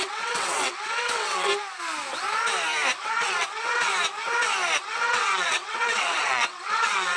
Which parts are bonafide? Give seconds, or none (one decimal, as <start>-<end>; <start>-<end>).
1.5-3.0; 3.9-4.8